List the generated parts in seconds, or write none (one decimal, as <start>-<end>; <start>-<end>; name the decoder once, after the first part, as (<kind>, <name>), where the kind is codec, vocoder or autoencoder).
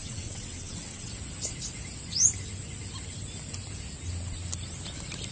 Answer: 0.0-1.1 (vocoder, WaveNeXt)